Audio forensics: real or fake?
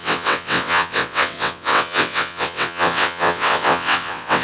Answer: fake